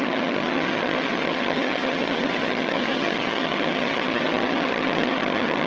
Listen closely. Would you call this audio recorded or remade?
remade